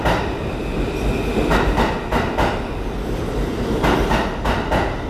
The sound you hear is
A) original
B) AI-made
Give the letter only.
A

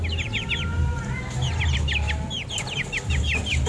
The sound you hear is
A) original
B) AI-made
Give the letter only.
A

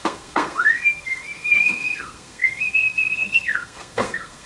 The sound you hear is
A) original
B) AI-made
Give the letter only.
B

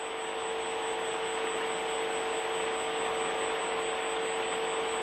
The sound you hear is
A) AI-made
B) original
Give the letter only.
B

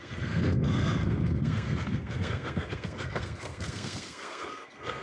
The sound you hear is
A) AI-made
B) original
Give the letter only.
A